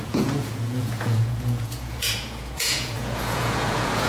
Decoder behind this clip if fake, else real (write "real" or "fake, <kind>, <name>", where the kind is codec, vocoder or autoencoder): fake, vocoder, Vocos